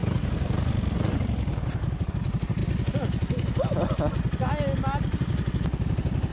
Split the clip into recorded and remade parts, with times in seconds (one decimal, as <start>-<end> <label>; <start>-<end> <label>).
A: 0.0-6.3 recorded